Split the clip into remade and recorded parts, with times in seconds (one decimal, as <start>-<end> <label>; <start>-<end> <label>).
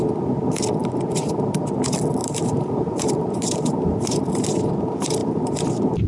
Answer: 0.0-0.8 recorded; 0.8-1.6 remade; 1.6-2.2 recorded; 2.2-4.3 remade; 4.3-5.2 recorded; 5.2-6.1 remade